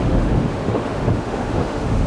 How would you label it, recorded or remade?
remade